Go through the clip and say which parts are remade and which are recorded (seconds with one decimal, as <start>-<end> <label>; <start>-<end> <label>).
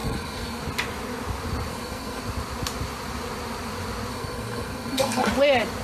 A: 0.0-0.6 remade; 0.6-1.7 recorded; 1.7-2.2 remade; 2.2-4.1 recorded; 4.1-5.3 remade; 5.3-5.8 recorded